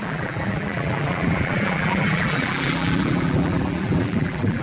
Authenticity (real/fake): fake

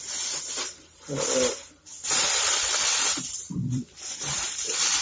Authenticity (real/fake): fake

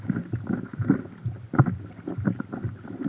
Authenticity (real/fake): real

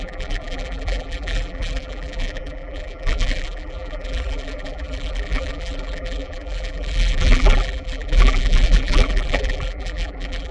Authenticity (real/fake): fake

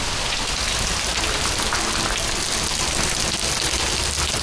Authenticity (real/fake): real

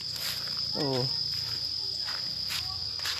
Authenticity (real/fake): real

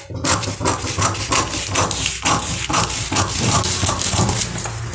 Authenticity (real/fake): real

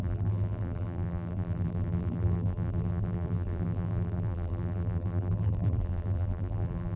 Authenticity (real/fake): fake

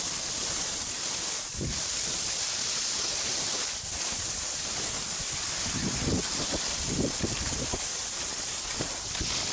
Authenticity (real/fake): fake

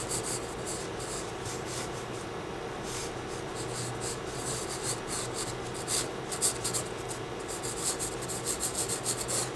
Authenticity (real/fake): real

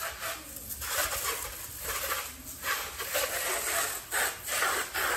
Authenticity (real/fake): real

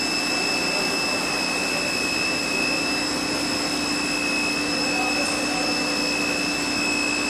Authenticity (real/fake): real